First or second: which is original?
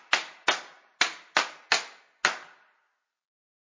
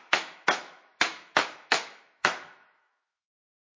first